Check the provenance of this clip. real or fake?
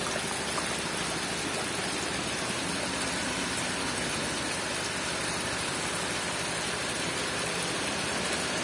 real